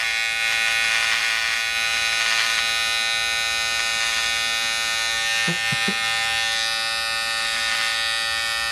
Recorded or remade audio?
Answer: recorded